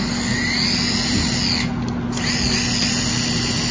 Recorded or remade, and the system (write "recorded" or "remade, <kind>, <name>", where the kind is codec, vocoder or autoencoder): recorded